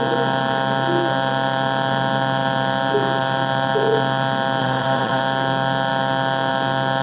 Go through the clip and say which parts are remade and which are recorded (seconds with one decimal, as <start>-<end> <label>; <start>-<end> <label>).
0.0-4.6 recorded; 4.6-5.2 remade; 5.2-7.0 recorded